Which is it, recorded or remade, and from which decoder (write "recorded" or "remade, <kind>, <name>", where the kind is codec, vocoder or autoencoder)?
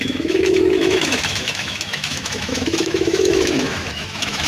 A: remade, autoencoder, DAC-VAE